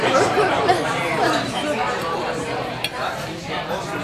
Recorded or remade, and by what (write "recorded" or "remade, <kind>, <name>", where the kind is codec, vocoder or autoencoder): remade, vocoder, BigVGAN v2